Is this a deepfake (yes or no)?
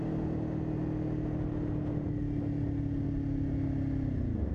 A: no